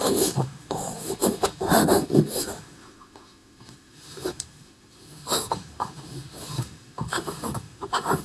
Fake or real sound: fake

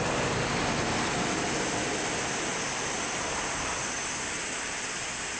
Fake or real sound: real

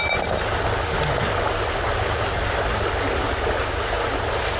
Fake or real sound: real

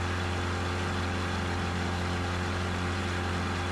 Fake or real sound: real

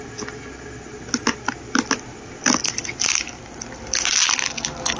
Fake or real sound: real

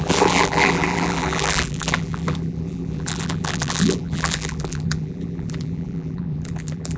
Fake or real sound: fake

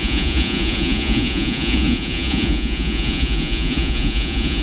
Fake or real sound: fake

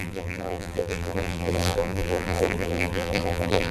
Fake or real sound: fake